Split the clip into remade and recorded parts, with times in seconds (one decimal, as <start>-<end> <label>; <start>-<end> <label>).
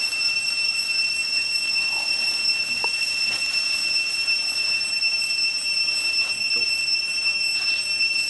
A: 0.0-1.2 recorded; 1.2-3.2 remade; 3.2-8.3 recorded